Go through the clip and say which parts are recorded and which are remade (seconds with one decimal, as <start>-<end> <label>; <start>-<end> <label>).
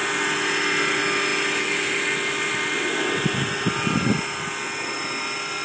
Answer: 0.0-5.6 recorded